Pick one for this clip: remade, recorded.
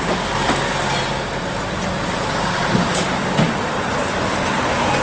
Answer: recorded